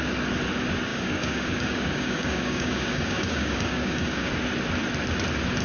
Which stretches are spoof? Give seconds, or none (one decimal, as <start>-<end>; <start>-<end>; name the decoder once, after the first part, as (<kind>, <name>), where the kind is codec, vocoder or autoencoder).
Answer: 0.9-4.3 (codec, DAC)